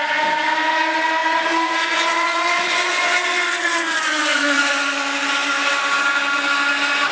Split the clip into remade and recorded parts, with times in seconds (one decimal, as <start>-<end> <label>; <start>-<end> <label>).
0.0-1.2 recorded; 1.2-4.7 remade; 4.7-7.1 recorded